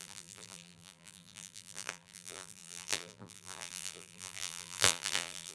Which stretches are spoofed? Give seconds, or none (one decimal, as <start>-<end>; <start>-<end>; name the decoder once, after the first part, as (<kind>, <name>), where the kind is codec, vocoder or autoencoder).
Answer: 0.0-5.5 (vocoder, BigVGAN v2)